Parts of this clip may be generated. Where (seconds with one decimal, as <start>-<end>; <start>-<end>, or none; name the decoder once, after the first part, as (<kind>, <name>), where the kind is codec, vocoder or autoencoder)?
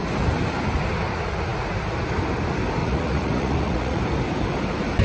2.8-4.0 (vocoder, Vocos)